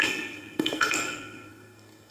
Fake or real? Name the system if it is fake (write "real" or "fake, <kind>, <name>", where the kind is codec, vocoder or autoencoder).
fake, codec, SNAC